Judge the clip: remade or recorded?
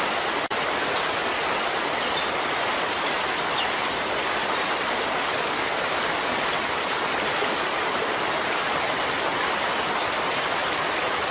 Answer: recorded